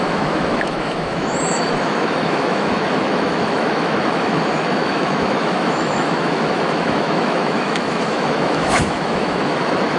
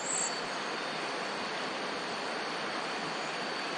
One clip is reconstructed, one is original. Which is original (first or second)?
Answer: second